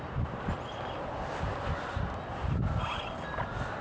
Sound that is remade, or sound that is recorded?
recorded